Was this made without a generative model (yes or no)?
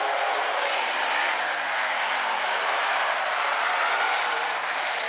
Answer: no